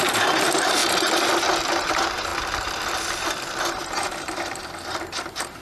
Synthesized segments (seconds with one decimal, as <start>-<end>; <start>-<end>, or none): 0.0-0.8; 1.6-2.3; 3.7-5.6